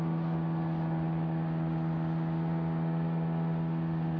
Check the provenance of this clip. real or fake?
real